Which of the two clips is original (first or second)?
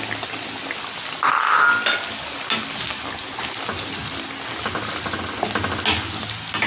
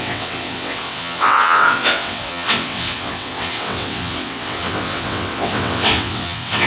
first